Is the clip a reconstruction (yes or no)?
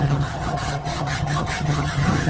yes